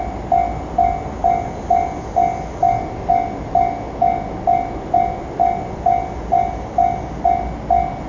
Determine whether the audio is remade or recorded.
recorded